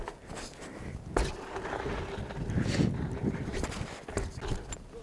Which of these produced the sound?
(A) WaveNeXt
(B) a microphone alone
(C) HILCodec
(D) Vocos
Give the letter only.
B